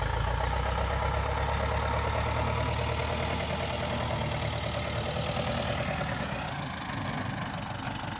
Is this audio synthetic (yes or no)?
no